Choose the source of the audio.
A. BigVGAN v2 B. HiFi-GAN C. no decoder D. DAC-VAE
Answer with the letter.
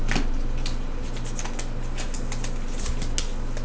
C